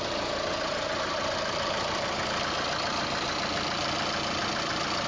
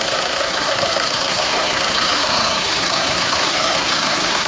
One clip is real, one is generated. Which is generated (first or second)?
second